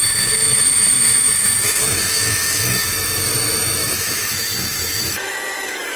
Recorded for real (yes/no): no